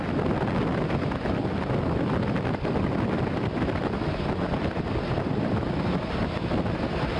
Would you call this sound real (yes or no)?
yes